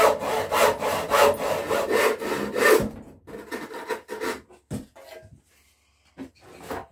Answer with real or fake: real